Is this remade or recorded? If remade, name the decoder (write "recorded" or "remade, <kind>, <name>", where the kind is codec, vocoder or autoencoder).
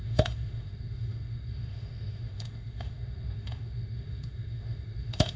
remade, autoencoder, DAC-VAE